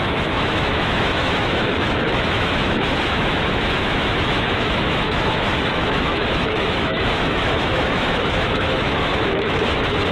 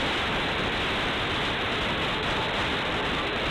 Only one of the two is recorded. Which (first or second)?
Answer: second